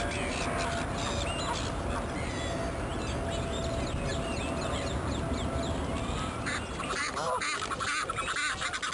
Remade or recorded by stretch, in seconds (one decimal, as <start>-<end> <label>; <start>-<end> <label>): 0.0-8.9 recorded

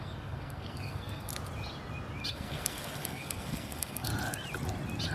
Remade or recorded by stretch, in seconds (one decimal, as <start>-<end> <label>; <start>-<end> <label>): 0.0-1.3 remade; 1.3-2.3 recorded; 2.3-4.1 remade; 4.1-5.1 recorded

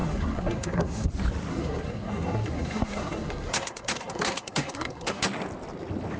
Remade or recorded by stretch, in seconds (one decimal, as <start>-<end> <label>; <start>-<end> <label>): 0.0-1.1 remade; 1.1-1.5 recorded; 1.5-5.2 remade; 5.2-6.2 recorded